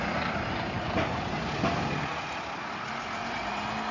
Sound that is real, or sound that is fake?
real